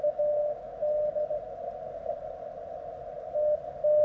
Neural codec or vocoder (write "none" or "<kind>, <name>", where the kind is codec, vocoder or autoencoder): none